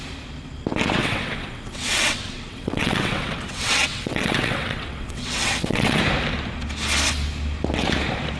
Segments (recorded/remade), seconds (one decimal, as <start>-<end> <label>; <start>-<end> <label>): 0.0-1.0 recorded; 1.0-6.0 remade; 6.0-8.4 recorded